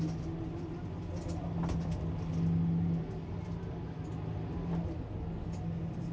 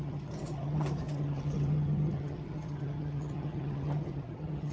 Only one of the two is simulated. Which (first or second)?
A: second